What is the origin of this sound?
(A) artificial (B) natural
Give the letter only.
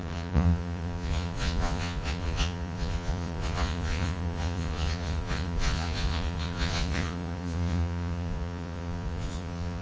A